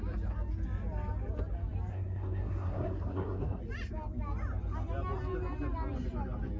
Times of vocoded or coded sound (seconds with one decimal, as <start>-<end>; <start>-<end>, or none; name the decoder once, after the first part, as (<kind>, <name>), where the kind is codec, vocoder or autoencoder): 1.9-3.6 (codec, SNAC)